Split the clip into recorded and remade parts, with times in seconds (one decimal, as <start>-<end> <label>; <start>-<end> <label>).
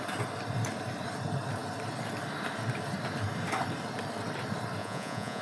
0.0-4.8 recorded; 4.8-5.4 remade